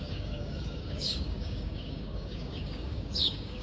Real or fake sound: fake